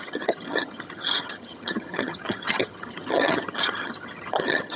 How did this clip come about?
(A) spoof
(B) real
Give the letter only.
A